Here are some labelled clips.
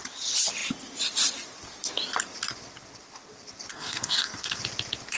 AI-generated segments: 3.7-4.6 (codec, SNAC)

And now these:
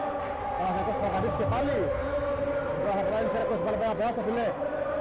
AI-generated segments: none

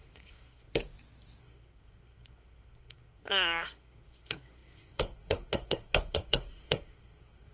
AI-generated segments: 0.0-0.7 (codec, SNAC); 1.4-7.5